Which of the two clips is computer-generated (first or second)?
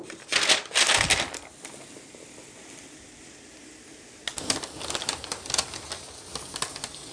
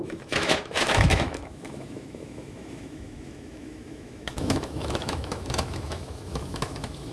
second